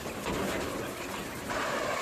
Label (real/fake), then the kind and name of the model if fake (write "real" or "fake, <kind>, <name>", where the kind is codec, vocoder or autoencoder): real